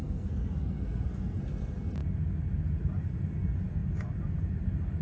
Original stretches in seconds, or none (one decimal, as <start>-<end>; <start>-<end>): 1.4-5.0

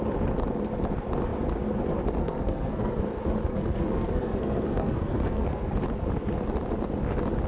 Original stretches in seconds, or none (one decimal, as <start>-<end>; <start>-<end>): 0.0-2.2; 3.0-3.5; 5.7-7.5

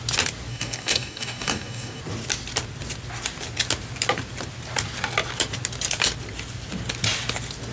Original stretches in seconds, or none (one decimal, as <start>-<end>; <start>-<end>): 0.0-0.5; 2.0-7.7

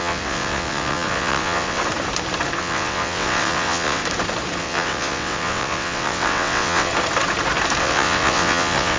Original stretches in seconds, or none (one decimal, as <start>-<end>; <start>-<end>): 1.8-2.6; 4.0-4.6; 6.9-7.8

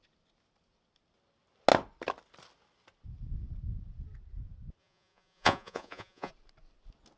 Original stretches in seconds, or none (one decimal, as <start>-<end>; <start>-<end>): 0.0-4.8; 6.3-7.2

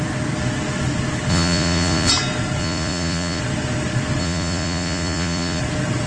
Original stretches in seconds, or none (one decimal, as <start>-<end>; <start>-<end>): 0.0-1.3; 2.1-2.6; 3.4-4.2; 5.6-6.1

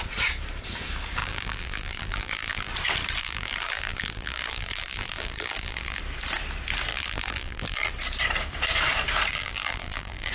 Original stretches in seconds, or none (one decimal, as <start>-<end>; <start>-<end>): 0.0-1.2; 2.7-3.2; 6.0-6.9; 7.9-9.3